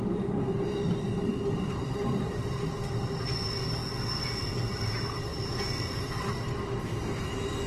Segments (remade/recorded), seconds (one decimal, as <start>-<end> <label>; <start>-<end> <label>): 0.0-2.8 remade; 2.8-3.4 recorded; 3.4-3.8 remade; 3.8-4.8 recorded; 4.8-5.3 remade; 5.3-7.2 recorded; 7.2-7.7 remade